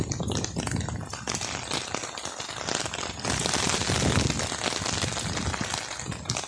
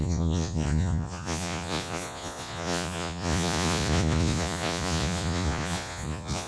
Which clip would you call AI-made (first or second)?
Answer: second